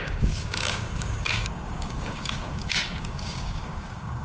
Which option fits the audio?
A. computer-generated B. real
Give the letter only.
A